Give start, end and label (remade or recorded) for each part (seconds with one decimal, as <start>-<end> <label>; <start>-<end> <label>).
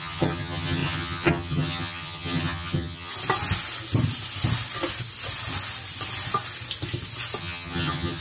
0.0-3.1 remade; 3.1-7.4 recorded; 7.4-8.2 remade